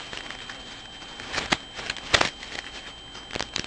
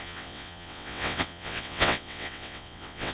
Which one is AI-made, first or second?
second